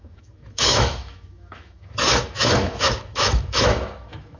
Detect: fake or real fake